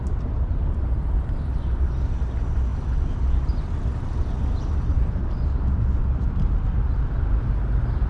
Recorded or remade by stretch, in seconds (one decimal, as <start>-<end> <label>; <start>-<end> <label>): 0.0-8.1 recorded